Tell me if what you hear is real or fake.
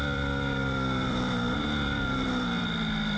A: fake